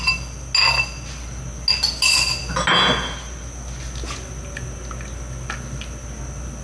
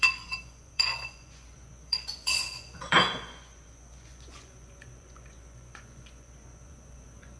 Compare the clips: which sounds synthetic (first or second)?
second